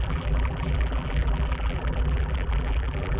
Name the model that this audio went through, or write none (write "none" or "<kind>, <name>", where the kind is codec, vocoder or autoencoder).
vocoder, BigVGAN v2